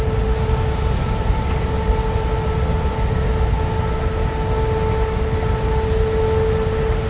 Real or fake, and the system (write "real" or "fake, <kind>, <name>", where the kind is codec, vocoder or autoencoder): real